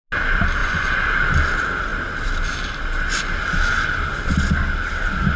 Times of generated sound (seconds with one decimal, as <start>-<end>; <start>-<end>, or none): 0.6-1.1